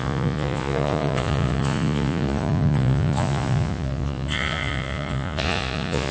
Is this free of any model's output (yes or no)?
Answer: no